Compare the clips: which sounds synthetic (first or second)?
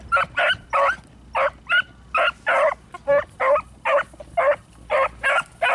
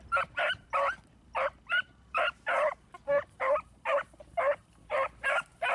second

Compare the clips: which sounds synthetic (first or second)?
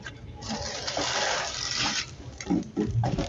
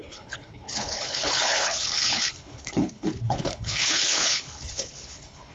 second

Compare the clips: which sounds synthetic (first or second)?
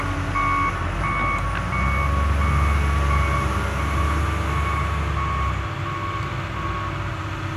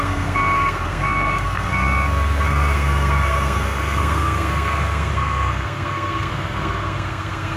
second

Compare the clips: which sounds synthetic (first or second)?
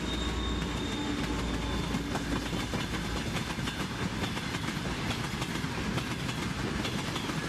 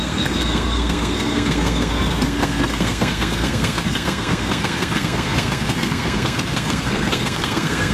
second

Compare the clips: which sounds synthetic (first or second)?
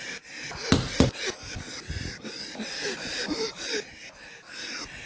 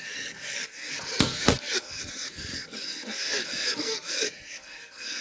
second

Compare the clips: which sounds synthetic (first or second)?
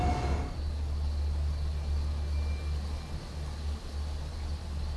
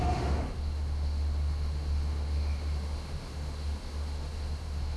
second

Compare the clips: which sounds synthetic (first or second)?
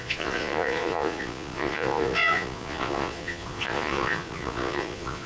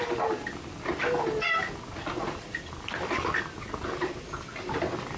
first